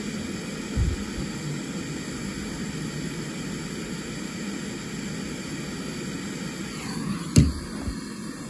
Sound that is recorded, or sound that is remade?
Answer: recorded